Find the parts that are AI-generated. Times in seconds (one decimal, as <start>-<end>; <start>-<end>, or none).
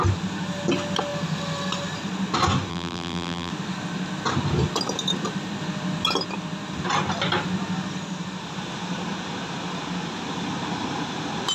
2.7-3.5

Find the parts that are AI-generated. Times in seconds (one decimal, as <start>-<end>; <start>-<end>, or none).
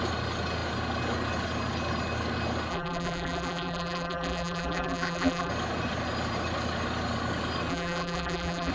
2.7-5.5; 7.7-8.7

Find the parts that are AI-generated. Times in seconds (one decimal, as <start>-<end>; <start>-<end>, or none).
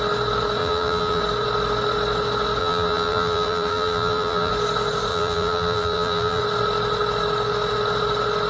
0.6-1.2; 2.6-4.5; 5.1-6.4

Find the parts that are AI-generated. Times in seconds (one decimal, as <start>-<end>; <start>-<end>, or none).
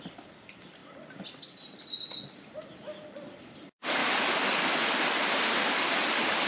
0.0-4.0